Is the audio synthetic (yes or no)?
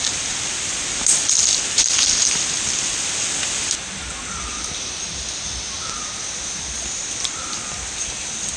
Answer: no